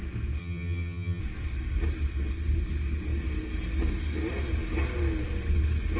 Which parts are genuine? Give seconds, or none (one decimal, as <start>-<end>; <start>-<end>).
0.0-0.4; 1.2-6.0